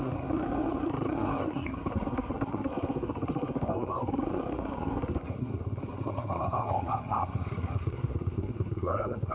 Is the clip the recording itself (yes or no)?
no